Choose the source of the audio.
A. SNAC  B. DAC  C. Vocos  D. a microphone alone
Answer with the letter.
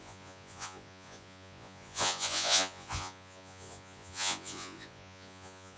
C